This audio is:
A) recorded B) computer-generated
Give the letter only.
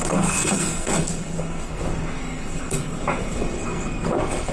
B